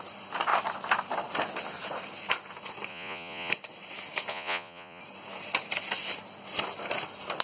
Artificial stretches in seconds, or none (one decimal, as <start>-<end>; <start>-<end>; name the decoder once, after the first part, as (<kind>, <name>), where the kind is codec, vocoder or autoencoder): 2.9-3.5 (vocoder, Vocos); 4.3-5.0